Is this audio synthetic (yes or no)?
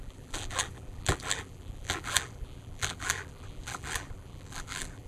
yes